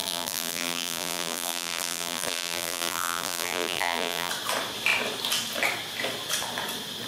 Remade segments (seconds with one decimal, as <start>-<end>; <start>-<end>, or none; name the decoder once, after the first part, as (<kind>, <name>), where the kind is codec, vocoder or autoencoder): 0.0-4.3 (vocoder, BigVGAN v2)